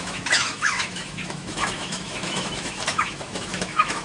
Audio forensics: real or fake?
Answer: fake